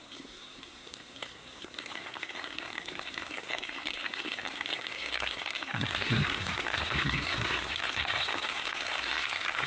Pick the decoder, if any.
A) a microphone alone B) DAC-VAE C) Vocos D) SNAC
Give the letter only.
D